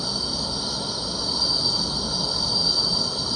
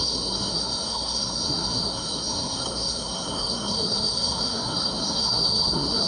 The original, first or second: first